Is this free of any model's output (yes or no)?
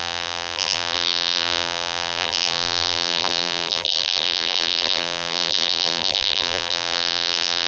no